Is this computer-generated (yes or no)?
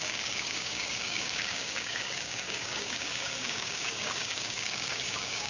yes